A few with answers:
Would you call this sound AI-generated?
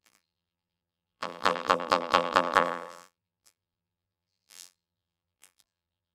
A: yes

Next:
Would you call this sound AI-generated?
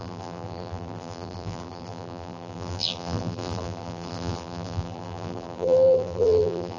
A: yes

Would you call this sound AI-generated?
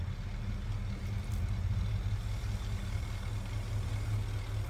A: no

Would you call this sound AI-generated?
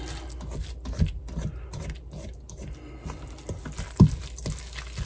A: no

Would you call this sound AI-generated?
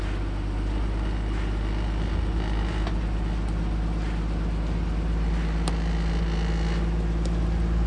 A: no